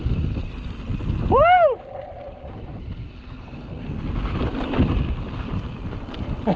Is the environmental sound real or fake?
real